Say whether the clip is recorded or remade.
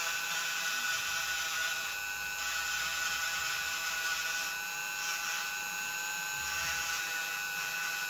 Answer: recorded